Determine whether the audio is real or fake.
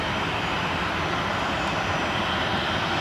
real